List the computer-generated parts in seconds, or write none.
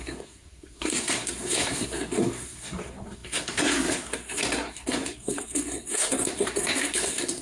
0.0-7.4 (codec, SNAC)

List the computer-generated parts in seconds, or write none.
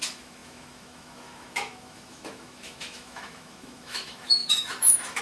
0.0-5.2 (autoencoder, DAC-VAE)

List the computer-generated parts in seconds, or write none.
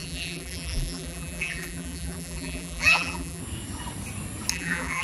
0.0-3.4 (vocoder, BigVGAN v2); 4.5-5.0